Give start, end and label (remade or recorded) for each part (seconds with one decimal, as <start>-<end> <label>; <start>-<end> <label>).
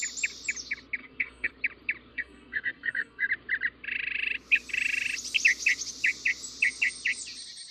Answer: 0.0-1.0 recorded; 1.0-1.5 remade; 1.5-2.1 recorded; 2.1-3.3 remade; 3.3-7.7 recorded